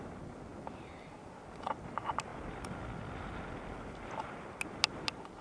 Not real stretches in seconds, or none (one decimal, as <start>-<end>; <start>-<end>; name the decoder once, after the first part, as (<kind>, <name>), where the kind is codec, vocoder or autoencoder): none